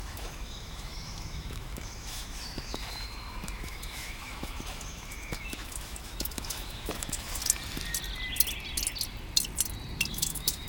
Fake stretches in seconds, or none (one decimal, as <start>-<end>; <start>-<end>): 0.0-7.4; 10.1-10.7